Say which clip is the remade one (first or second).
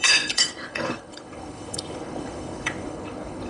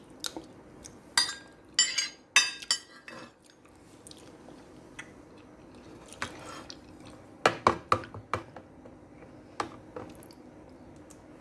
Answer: first